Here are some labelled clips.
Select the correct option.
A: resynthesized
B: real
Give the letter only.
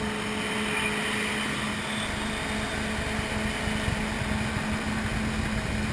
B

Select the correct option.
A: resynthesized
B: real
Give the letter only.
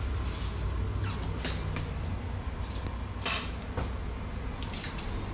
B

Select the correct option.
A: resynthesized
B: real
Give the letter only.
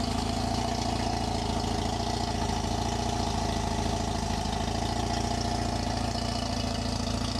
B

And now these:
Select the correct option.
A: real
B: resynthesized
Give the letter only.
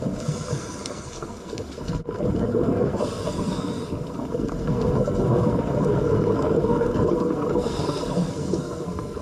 B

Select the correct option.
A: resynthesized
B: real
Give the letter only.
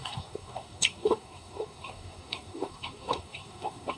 A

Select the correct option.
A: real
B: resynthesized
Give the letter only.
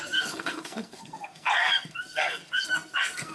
B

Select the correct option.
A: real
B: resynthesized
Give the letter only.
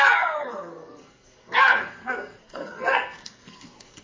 B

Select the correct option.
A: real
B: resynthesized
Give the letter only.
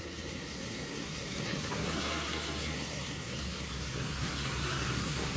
B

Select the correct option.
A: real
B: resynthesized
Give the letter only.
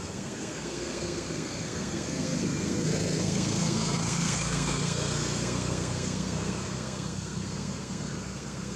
B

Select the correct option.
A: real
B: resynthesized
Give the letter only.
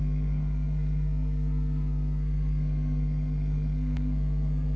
B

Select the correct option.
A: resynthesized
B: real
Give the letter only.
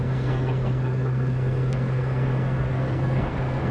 A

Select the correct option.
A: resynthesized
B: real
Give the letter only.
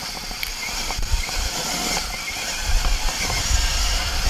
B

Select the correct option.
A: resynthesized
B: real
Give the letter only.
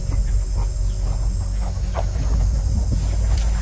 B